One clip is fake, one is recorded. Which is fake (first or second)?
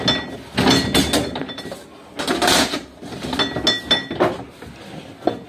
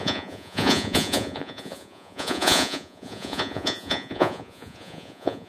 second